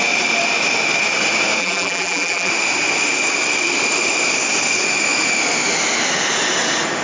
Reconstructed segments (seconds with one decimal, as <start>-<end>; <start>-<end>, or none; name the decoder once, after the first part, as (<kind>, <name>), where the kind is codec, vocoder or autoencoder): 1.6-2.5 (vocoder, BigVGAN v2)